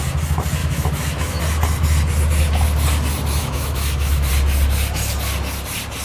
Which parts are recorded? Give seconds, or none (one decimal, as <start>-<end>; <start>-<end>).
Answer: 0.0-0.6; 1.4-3.4; 4.3-6.0